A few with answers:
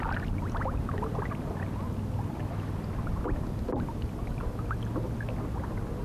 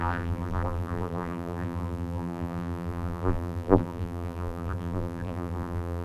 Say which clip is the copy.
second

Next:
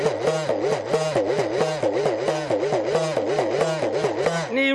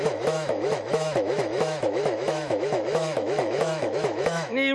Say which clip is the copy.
second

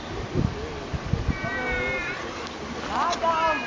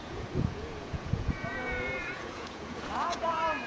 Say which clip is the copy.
second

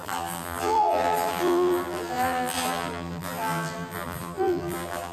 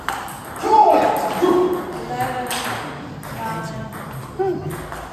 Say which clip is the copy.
first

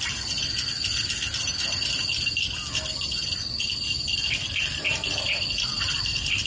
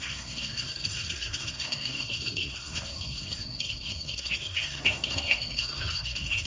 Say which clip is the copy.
second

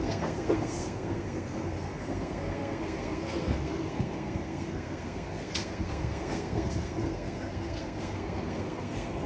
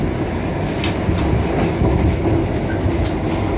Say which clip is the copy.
first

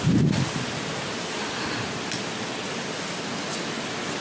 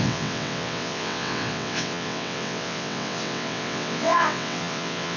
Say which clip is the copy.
second